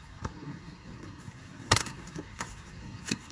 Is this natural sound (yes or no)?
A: no